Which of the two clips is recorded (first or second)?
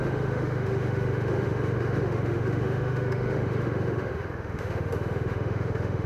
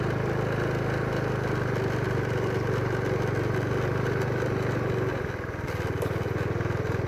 second